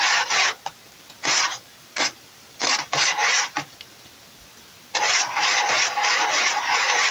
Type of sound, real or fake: fake